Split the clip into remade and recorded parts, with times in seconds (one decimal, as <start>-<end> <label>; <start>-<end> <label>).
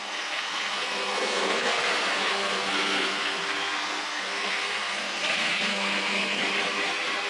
0.0-6.4 remade; 6.4-7.3 recorded